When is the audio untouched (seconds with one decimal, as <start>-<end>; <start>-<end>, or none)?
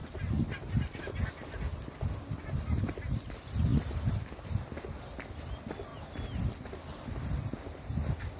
0.0-8.4